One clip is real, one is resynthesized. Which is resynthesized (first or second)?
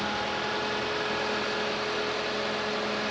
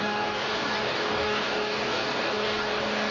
second